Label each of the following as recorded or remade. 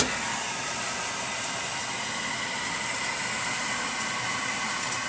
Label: recorded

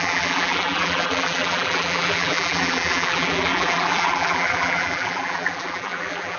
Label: remade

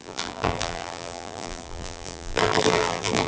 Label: remade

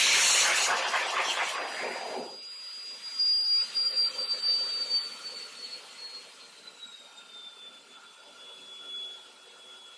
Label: recorded